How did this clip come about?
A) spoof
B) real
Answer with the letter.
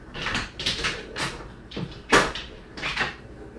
A